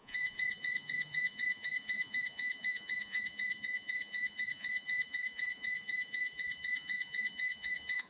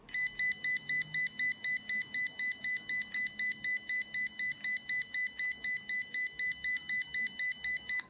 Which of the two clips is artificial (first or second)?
first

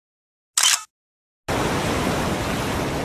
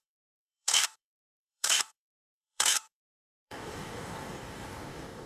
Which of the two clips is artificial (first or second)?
second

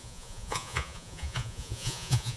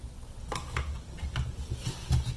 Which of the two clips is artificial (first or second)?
first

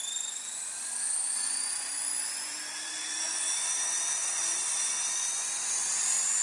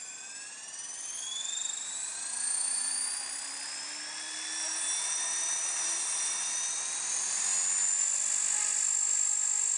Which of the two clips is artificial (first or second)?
first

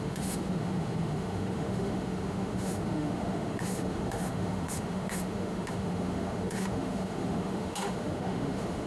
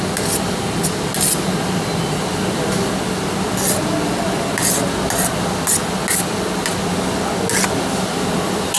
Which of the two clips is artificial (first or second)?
first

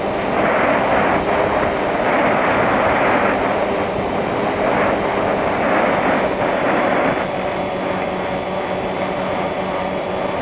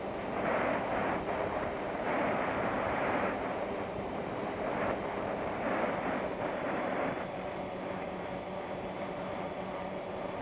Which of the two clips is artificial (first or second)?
second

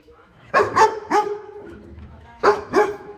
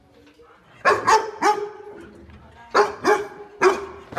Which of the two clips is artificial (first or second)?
first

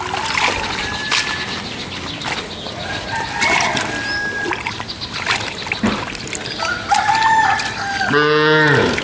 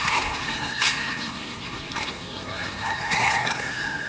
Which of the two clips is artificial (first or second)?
second